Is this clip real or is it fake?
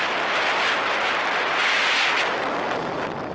real